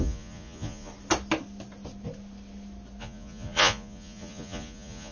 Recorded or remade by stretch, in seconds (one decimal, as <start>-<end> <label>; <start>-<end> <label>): 0.0-0.9 remade; 0.9-3.0 recorded; 3.0-5.1 remade